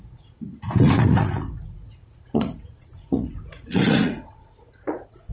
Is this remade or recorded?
remade